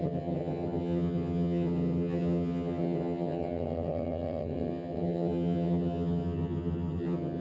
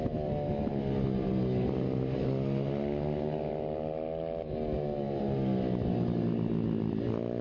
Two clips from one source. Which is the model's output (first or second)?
first